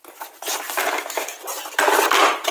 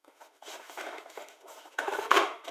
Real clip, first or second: first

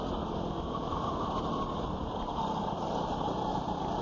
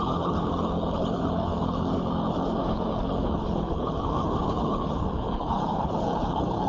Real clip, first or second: first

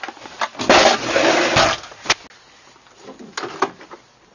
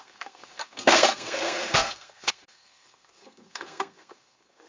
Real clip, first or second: first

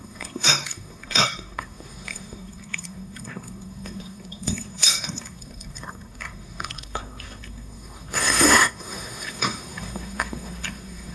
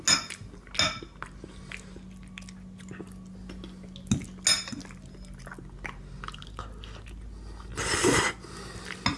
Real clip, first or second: second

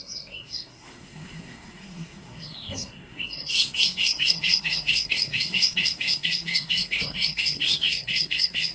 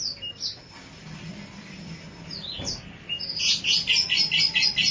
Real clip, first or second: second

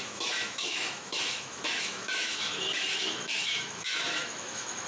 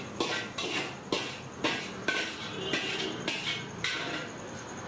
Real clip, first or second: second